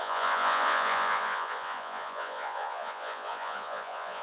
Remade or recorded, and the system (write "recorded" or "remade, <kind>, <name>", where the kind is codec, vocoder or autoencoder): remade, vocoder, Vocos